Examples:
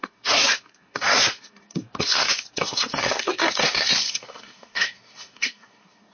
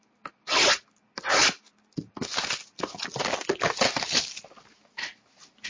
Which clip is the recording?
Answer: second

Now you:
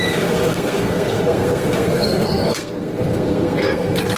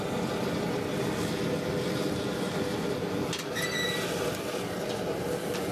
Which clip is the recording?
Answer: second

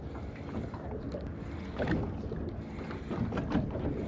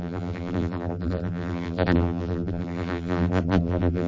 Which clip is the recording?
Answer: first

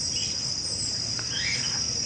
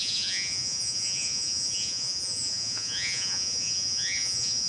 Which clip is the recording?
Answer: first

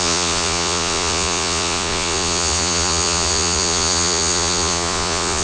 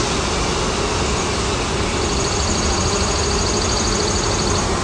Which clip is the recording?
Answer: second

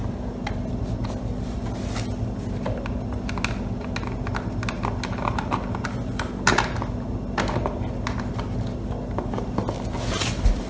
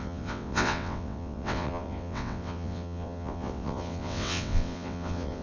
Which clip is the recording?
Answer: first